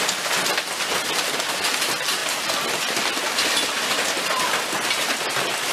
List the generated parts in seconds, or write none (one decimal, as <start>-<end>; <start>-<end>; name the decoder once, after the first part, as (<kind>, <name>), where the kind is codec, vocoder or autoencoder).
none

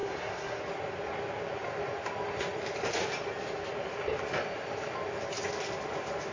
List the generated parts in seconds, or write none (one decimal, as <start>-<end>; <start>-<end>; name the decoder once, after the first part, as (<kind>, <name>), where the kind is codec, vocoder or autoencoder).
0.0-0.6 (codec, SNAC)

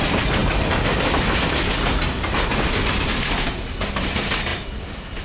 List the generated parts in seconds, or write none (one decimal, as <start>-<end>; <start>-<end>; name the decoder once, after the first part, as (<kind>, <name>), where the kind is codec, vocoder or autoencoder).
none

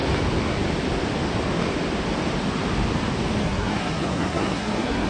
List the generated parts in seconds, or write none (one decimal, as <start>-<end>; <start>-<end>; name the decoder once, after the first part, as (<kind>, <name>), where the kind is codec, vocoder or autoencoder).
3.4-5.1 (codec, SNAC)

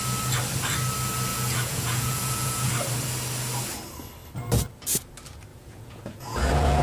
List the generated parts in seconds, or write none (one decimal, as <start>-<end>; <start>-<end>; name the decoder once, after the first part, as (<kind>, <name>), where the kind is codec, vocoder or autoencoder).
1.3-2.7 (vocoder, Vocos); 5.5-6.8